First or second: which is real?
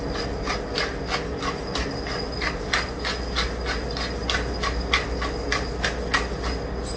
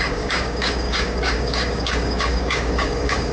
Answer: first